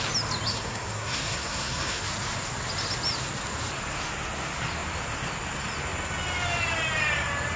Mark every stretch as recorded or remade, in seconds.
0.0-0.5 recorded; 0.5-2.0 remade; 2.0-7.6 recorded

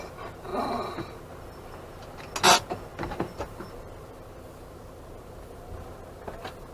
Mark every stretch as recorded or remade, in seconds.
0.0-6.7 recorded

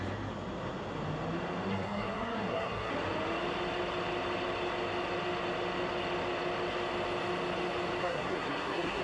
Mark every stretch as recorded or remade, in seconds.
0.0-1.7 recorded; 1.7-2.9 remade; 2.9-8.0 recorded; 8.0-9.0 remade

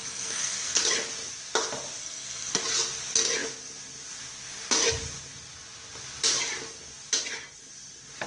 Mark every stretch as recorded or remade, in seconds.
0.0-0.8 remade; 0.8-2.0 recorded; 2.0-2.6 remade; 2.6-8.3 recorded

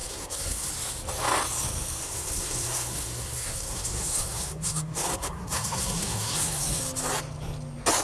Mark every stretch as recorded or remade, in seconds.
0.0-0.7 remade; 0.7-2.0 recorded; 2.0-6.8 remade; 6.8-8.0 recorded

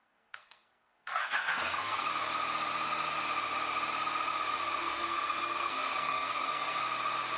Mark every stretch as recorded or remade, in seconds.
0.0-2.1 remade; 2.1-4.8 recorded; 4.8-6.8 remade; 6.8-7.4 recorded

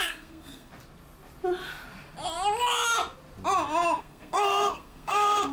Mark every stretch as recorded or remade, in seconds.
0.0-0.7 remade; 0.7-4.0 recorded; 4.0-5.5 remade

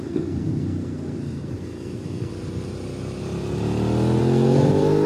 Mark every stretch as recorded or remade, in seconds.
0.0-2.3 remade; 2.3-4.2 recorded; 4.2-5.1 remade